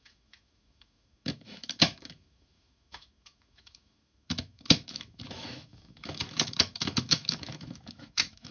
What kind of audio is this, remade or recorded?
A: remade